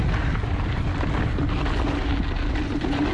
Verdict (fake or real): real